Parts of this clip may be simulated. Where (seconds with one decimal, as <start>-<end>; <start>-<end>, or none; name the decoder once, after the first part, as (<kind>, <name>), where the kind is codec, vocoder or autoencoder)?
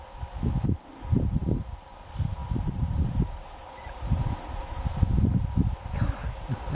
2.4-4.9 (vocoder, BigVGAN v2)